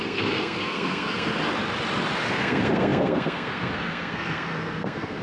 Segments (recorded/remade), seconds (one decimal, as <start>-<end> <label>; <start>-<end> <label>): 0.0-1.3 remade; 1.3-2.3 recorded; 2.3-5.2 remade